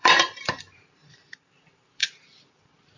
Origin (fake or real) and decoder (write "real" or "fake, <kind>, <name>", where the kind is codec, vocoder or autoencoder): fake, vocoder, BigVGAN v2